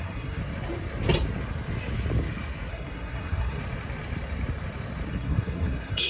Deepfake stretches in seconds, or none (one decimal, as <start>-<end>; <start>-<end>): 0.0-0.4; 2.7-3.6; 5.1-6.1

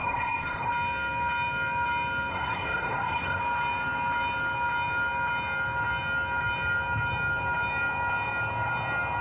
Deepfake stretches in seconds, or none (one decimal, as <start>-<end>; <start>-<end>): 0.0-0.7; 2.3-3.4